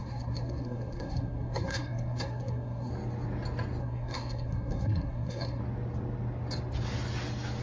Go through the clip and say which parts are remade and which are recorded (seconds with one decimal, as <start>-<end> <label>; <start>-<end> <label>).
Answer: 0.0-2.9 remade; 2.9-3.8 recorded; 3.8-5.6 remade; 5.6-7.6 recorded